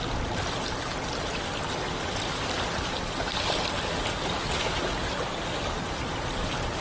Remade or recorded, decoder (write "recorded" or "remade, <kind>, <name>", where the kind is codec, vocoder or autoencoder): recorded